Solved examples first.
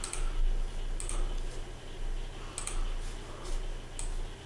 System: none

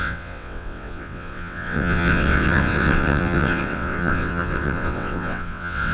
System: vocoder, WaveNeXt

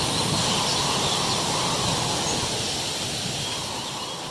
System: none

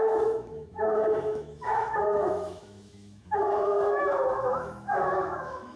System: autoencoder, DAC-VAE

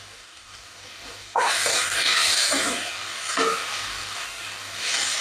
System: codec, DAC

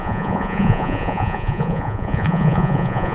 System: vocoder, Vocos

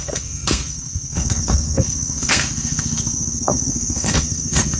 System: codec, SNAC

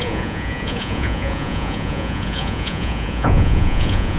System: vocoder, Vocos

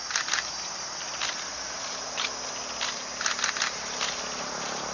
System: none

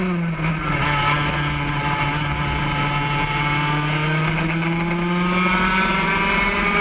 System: none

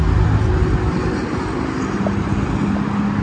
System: none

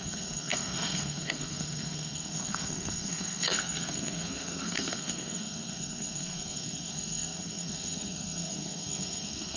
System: codec, SNAC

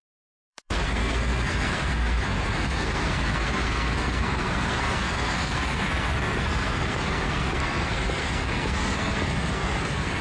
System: codec, SNAC